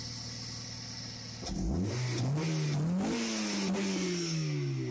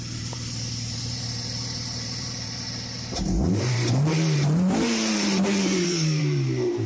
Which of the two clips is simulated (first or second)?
second